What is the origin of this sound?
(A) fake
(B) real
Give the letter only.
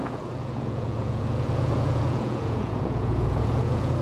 A